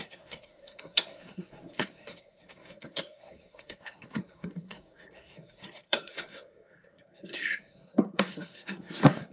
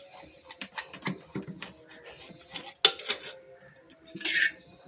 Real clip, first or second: second